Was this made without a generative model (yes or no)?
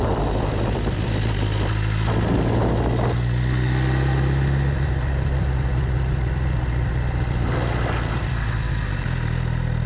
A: yes